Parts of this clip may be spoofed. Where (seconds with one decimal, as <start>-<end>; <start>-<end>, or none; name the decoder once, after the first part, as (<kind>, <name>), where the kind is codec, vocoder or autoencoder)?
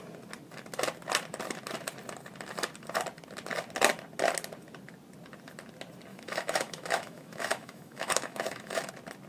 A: 6.1-8.9 (autoencoder, DAC-VAE)